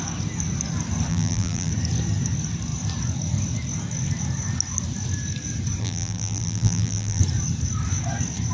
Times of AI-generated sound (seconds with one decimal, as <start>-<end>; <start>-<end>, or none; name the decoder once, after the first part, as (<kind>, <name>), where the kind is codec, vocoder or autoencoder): 1.1-1.7 (vocoder, BigVGAN v2); 5.8-7.2